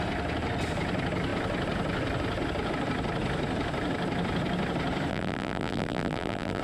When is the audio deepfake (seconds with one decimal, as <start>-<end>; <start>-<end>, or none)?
5.1-6.6

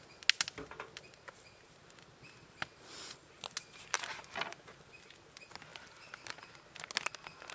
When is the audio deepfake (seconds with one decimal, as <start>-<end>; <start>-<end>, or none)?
none

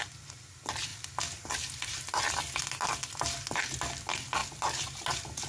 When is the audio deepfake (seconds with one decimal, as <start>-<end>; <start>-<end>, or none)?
none